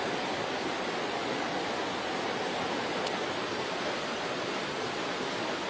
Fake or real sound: real